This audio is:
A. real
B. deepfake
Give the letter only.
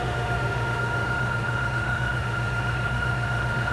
B